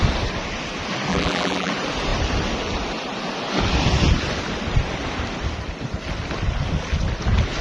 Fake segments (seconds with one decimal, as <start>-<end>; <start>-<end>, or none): 1.1-1.7